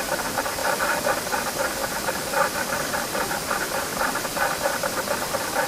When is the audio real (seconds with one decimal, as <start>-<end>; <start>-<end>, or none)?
0.0-5.7

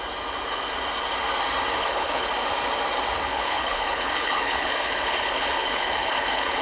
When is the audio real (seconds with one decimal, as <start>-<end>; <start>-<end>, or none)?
0.0-1.7; 2.3-3.3

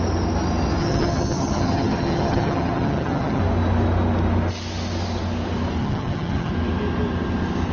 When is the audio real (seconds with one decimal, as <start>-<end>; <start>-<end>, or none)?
0.0-0.8; 3.4-5.8; 6.5-7.7

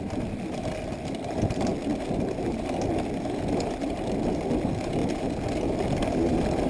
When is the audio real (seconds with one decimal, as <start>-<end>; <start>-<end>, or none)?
1.7-3.1; 5.0-5.5

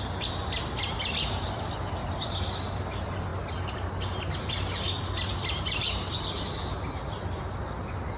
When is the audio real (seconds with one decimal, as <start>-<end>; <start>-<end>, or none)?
0.0-8.2

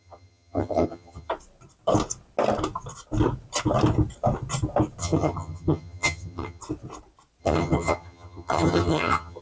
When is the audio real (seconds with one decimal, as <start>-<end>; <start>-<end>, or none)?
1.3-5.0; 6.6-7.4

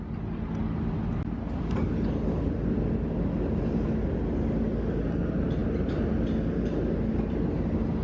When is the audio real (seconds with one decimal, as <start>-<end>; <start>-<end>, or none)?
0.0-8.0